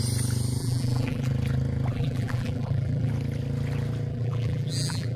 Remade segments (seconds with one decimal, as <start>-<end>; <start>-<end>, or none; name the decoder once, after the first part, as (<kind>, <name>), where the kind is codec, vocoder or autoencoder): 0.6-1.3 (vocoder, BigVGAN v2); 1.9-3.1; 4.1-5.2